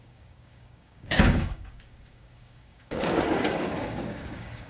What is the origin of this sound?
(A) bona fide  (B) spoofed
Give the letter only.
B